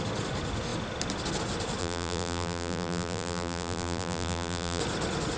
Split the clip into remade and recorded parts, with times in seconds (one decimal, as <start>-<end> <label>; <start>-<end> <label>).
0.0-1.8 recorded; 1.8-4.8 remade; 4.8-5.4 recorded